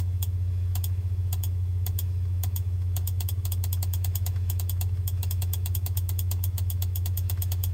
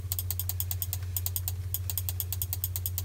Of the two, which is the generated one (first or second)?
first